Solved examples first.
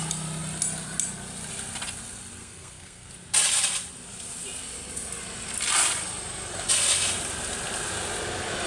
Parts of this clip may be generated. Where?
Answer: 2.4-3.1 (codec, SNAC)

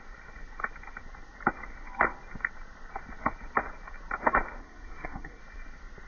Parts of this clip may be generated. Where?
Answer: 4.6-5.4 (codec, SNAC)